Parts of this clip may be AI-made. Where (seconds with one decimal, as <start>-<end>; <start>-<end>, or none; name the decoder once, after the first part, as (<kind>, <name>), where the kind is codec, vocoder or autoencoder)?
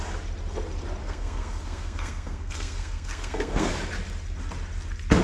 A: 1.0-3.7 (codec, SNAC)